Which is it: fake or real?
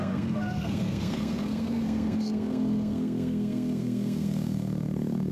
fake